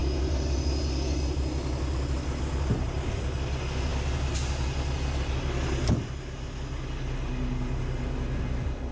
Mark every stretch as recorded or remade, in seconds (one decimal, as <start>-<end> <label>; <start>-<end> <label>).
0.0-8.9 recorded